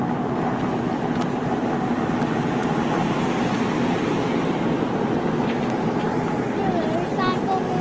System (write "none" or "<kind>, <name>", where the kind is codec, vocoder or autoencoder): none